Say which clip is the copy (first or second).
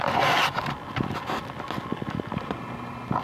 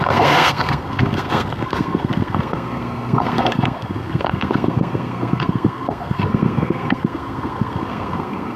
second